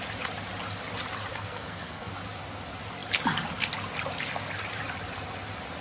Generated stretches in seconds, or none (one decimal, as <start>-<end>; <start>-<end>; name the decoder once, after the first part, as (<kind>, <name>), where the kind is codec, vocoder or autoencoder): 1.3-2.1 (codec, SNAC)